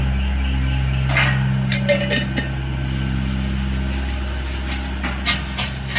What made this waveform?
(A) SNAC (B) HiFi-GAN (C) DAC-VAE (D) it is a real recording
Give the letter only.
D